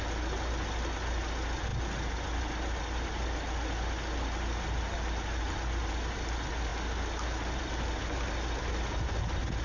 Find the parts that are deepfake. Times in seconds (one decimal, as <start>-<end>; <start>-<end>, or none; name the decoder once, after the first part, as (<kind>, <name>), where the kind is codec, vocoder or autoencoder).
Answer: none